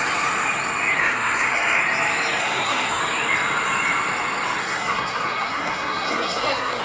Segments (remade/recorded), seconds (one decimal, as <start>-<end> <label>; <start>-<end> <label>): 0.0-1.0 recorded; 1.0-1.8 remade; 1.8-2.4 recorded; 2.4-3.0 remade; 3.0-4.6 recorded; 4.6-6.8 remade